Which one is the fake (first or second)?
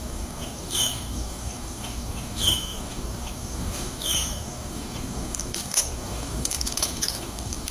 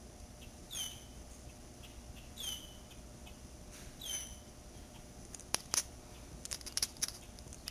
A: first